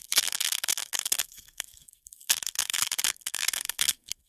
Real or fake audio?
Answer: fake